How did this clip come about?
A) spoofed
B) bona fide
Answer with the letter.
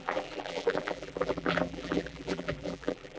A